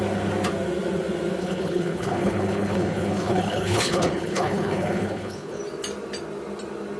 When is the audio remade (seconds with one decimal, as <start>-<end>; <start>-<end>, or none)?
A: 1.4-5.6